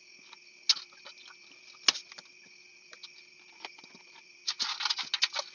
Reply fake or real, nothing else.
real